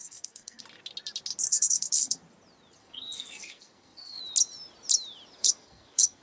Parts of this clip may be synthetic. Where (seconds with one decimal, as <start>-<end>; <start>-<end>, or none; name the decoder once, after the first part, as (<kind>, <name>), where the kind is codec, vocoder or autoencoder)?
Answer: 0.0-0.6 (codec, SNAC); 1.5-2.2; 2.8-4.2; 5.4-6.2